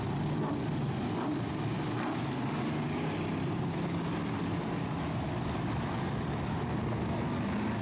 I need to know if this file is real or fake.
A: real